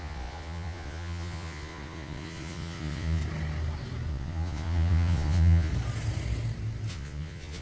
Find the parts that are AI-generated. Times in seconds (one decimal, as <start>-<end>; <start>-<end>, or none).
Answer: 0.0-3.2; 4.1-5.7; 6.9-7.6